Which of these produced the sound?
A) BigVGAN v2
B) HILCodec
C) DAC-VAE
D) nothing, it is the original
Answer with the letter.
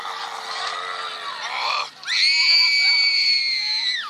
D